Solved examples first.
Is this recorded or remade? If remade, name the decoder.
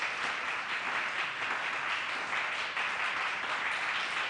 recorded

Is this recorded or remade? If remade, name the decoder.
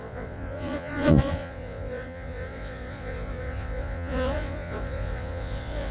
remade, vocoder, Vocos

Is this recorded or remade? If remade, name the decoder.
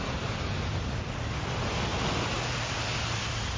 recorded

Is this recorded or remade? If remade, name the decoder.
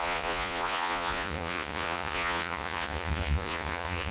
remade, vocoder, Vocos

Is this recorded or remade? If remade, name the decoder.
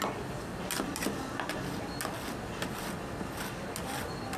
recorded